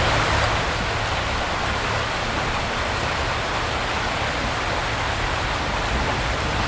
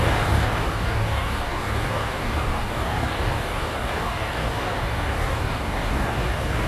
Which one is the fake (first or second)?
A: second